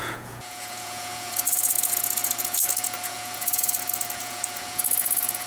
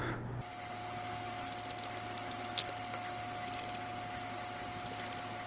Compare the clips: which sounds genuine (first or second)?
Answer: second